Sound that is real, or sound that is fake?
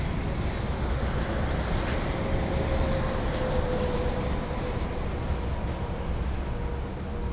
real